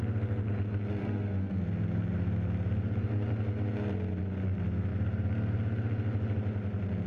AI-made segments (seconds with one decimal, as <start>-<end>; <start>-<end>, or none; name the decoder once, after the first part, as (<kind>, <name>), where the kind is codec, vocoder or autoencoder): 1.0-1.6 (codec, SNAC)